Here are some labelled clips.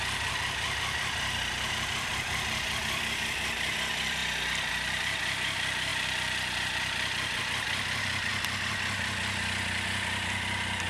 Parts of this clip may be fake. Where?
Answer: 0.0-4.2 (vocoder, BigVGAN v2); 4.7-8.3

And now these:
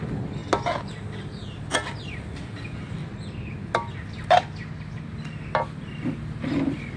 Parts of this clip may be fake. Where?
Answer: 0.0-0.4 (vocoder, BigVGAN v2); 1.0-3.0; 5.0-7.0

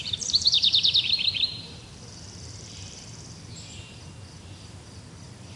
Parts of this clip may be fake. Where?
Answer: 0.0-3.0 (vocoder, BigVGAN v2)

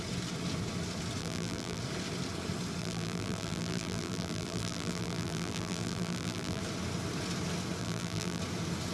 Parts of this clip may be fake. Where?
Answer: 1.2-1.8 (vocoder, BigVGAN v2); 2.8-6.6; 7.8-8.4

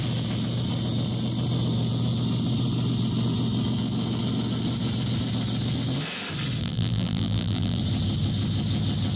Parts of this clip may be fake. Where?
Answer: 6.6-7.8 (vocoder, BigVGAN v2)

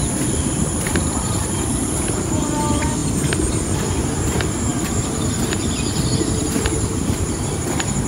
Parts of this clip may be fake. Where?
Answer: 0.0-8.1 (vocoder, BigVGAN v2)

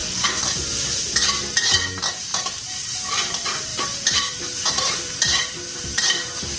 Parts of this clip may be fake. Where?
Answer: 0.0-2.3 (vocoder, BigVGAN v2); 3.1-6.6

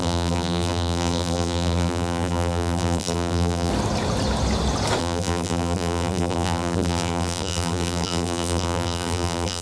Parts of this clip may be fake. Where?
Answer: 0.0-3.7 (vocoder, BigVGAN v2); 5.0-9.6